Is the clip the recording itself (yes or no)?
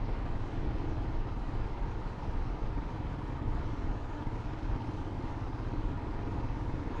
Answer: no